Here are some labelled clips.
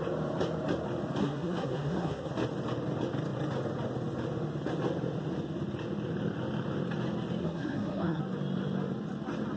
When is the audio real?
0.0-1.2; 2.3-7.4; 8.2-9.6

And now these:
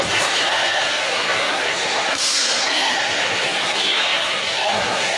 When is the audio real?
none

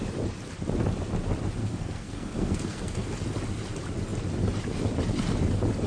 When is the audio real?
0.0-1.6; 3.1-5.9

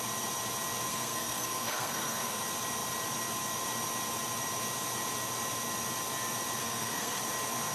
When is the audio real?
0.0-0.9; 2.4-6.6; 7.2-7.7